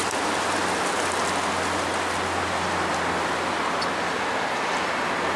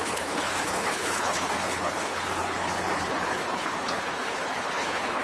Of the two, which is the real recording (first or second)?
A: first